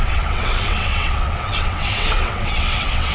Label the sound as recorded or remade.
remade